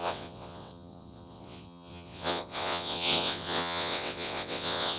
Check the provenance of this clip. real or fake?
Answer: fake